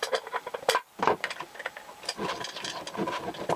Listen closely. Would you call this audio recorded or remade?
recorded